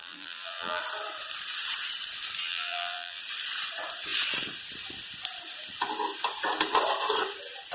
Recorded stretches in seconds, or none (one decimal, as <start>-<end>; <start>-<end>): 0.8-2.4; 3.2-7.7